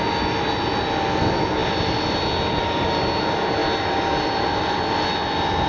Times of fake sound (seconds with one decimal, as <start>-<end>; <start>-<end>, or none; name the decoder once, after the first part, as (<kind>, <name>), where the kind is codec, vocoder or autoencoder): none